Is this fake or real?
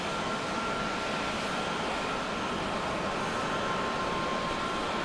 real